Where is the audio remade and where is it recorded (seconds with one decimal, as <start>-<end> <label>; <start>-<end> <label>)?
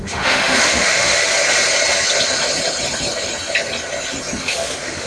0.0-1.3 remade; 1.3-4.4 recorded; 4.4-5.1 remade